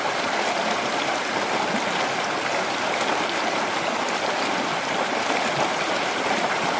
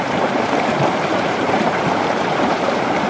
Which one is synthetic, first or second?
second